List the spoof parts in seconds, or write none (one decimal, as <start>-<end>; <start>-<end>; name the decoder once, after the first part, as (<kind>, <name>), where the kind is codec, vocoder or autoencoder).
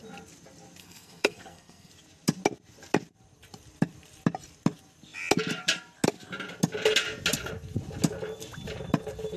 0.8-1.9 (codec, SNAC)